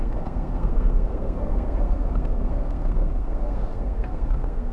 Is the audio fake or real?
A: fake